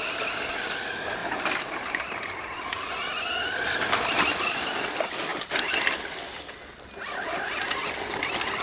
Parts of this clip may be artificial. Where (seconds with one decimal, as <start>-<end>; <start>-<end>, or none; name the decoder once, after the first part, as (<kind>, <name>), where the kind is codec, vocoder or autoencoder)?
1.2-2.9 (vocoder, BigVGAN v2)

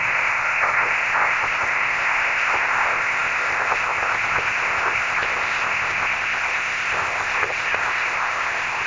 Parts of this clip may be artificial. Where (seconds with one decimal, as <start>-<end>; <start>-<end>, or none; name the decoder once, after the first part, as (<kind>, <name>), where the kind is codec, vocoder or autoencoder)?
0.0-8.9 (codec, ZipCodec)

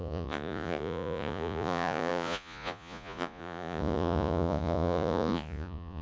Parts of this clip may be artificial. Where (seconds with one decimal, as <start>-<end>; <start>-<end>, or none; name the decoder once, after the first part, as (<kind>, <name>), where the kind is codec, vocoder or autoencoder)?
0.0-6.0 (vocoder, Vocos)